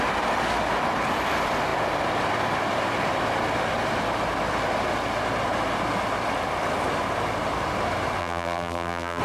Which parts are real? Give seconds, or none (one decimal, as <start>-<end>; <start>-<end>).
0.0-8.2

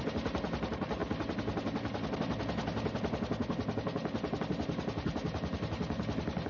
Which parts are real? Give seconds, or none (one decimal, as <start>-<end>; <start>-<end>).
0.0-6.5

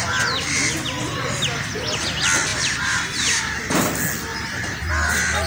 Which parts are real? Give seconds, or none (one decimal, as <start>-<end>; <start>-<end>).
0.0-2.5; 3.9-4.3; 4.9-5.5

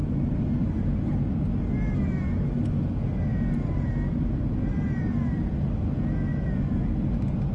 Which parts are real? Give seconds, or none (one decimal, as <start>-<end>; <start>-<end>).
0.0-4.7; 5.5-6.3; 7.0-7.5

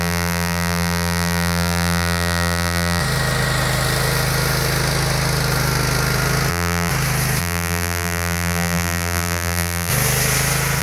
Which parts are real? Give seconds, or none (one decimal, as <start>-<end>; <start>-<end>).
3.0-6.5; 6.9-7.4; 9.9-10.8

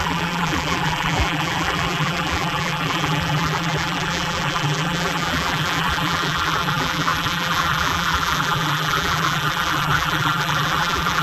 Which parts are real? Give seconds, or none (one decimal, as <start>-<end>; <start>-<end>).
none